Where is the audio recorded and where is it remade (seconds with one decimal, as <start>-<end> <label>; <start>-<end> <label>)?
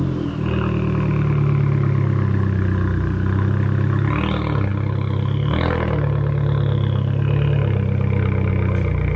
0.0-9.2 recorded